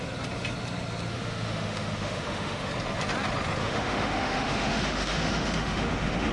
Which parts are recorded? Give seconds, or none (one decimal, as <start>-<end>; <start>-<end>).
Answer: 0.0-1.1; 2.7-3.6